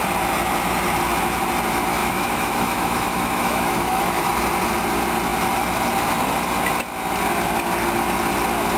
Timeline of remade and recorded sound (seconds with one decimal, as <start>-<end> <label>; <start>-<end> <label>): 0.0-2.0 recorded; 2.0-4.3 remade; 4.3-8.8 recorded